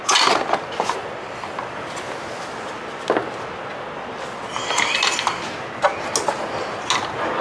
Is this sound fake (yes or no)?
no